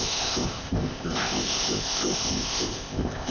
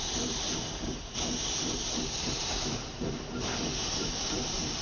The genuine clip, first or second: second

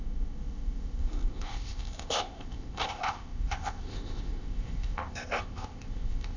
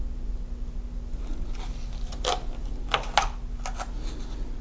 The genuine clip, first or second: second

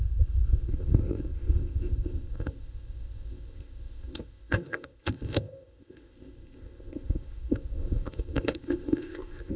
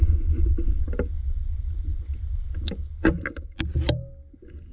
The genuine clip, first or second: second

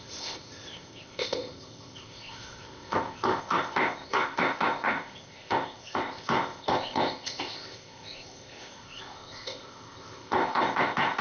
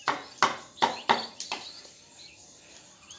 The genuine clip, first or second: second